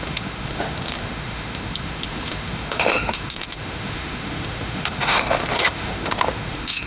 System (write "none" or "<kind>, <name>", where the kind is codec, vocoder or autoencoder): autoencoder, DAC-VAE